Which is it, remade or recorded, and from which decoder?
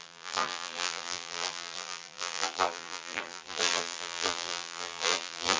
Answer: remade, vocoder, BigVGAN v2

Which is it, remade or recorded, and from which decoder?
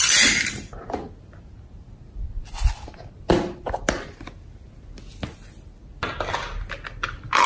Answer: recorded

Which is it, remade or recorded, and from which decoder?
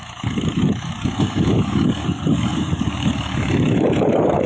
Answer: remade, codec, DAC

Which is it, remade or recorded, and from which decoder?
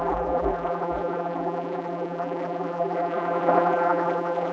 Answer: remade, vocoder, BigVGAN v2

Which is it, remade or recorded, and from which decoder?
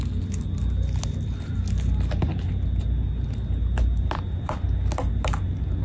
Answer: recorded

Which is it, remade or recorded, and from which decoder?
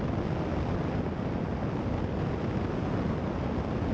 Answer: recorded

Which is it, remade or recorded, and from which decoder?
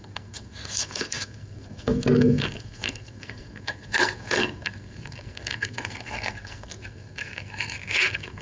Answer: remade, codec, SNAC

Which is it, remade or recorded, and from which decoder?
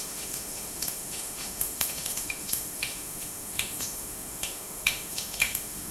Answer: remade, autoencoder, DAC-VAE